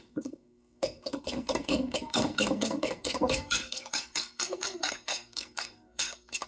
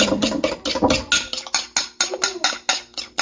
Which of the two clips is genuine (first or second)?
second